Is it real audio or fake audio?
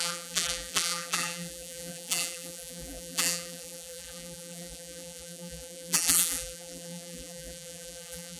fake